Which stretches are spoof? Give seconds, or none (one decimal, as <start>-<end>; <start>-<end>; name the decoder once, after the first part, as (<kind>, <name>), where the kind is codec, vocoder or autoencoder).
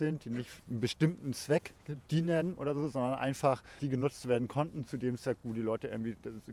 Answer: 0.0-5.4 (vocoder, Vocos)